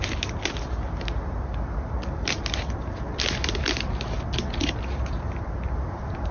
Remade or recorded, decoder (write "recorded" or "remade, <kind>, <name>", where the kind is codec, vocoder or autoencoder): recorded